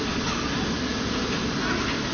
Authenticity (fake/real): real